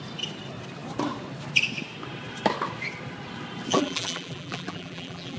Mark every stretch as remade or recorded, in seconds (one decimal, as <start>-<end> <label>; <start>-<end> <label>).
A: 0.0-3.7 recorded; 3.7-5.4 remade

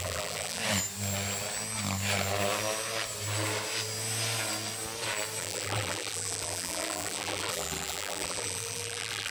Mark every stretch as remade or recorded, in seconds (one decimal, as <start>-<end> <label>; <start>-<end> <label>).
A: 0.0-0.6 remade; 0.6-5.4 recorded; 5.4-9.3 remade

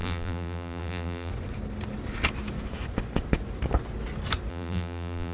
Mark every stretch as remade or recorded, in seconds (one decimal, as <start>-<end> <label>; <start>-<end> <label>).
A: 0.0-1.3 remade; 1.3-4.5 recorded; 4.5-5.3 remade

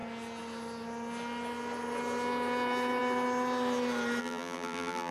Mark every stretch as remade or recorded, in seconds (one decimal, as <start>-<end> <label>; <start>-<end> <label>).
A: 0.0-4.2 recorded; 4.2-5.1 remade

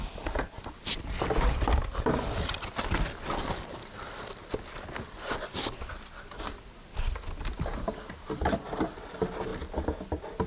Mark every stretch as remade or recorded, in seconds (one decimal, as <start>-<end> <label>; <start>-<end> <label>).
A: 0.0-10.5 recorded